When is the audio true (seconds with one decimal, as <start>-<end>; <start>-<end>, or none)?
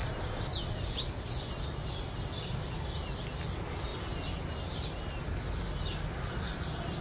0.0-7.0